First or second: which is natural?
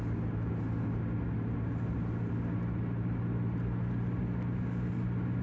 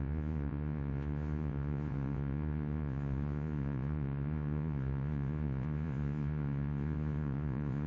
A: first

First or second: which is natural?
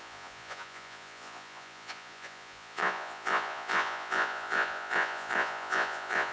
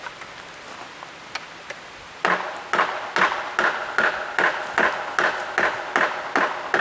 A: second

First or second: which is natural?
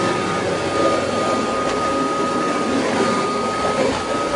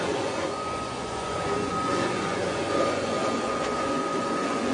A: first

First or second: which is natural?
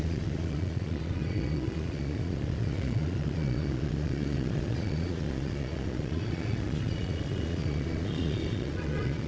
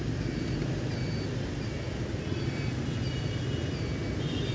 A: second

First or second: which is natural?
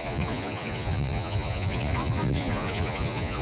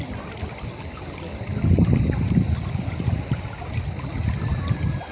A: second